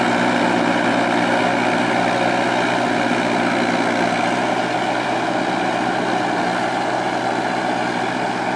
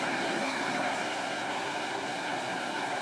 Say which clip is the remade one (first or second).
second